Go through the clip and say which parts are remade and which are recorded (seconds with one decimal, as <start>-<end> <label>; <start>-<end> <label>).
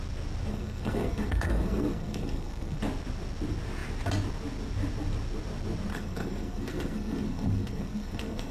0.0-0.5 recorded; 0.5-2.8 remade; 2.8-5.9 recorded; 5.9-8.5 remade